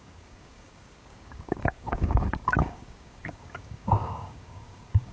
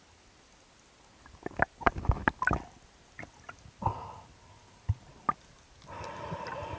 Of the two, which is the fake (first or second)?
first